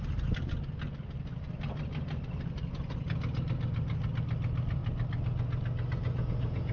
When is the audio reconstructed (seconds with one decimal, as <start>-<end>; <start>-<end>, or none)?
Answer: none